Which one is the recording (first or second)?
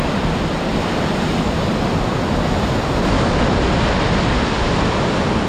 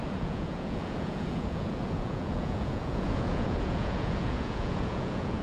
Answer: first